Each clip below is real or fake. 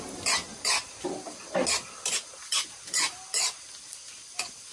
real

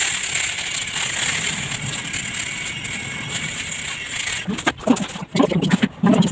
real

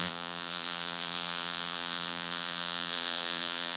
fake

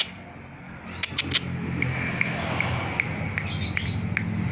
real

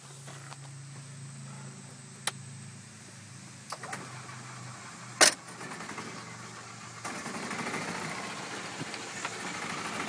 real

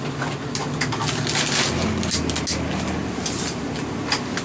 real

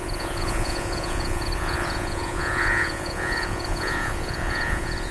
fake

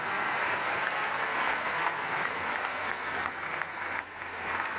fake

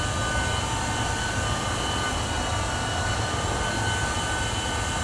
real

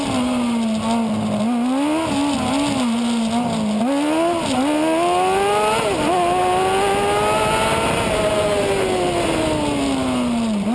real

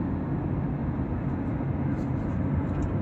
real